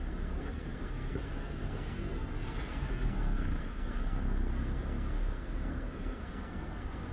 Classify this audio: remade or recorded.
remade